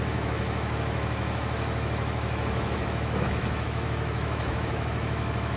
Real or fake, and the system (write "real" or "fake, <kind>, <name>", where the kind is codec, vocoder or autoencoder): fake, autoencoder, DAC-VAE